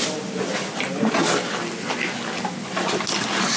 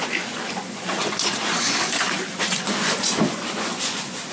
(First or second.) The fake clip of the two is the second